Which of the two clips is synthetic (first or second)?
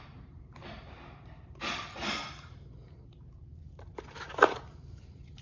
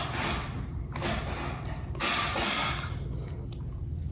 first